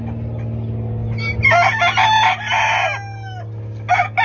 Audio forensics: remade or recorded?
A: recorded